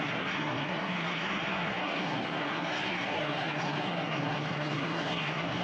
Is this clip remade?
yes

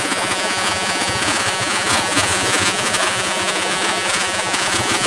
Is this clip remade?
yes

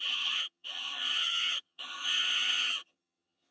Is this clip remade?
yes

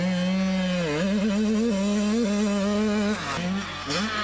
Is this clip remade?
no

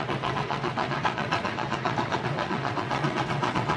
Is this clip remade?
yes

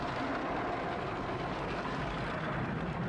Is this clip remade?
no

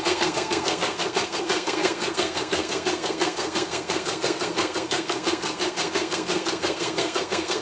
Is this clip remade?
yes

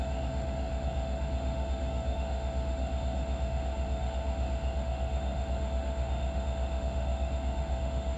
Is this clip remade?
yes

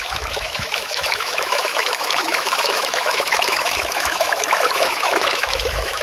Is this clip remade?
yes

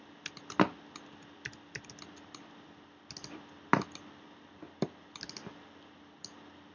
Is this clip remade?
no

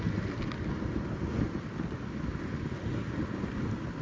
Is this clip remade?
no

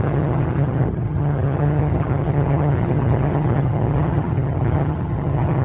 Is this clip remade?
yes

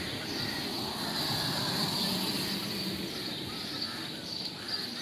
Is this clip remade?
no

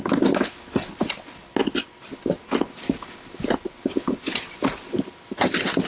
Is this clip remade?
no